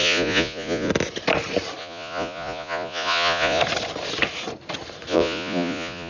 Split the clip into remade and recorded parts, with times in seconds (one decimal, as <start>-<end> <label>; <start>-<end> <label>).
0.0-0.9 remade; 0.9-1.8 recorded; 1.8-3.6 remade; 3.6-5.1 recorded; 5.1-6.1 remade